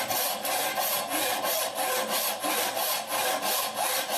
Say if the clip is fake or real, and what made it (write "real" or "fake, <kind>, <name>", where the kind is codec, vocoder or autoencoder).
real